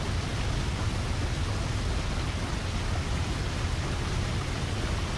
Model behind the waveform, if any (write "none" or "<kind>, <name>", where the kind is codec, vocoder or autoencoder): none